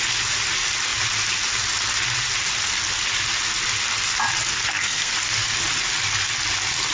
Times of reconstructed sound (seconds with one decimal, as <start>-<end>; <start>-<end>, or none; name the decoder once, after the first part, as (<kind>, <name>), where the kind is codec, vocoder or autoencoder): 4.5-5.1 (codec, SNAC)